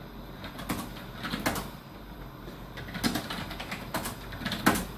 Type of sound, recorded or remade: recorded